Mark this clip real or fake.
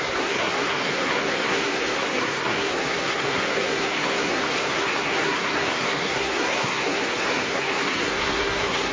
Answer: fake